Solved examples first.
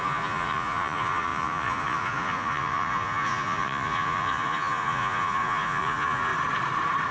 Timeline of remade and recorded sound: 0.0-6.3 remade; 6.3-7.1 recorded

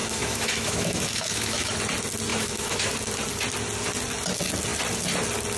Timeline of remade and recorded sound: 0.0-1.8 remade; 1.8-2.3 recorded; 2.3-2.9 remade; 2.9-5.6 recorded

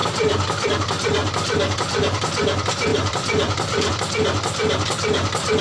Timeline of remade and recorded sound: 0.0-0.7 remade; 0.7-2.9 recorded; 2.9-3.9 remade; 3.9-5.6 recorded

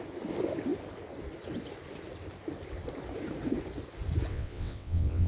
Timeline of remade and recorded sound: 0.0-4.3 recorded; 4.3-5.3 remade